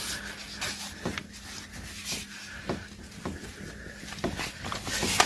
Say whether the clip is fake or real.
real